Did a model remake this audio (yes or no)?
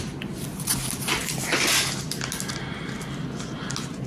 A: no